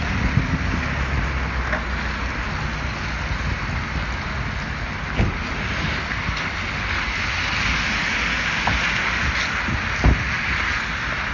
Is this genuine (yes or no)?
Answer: yes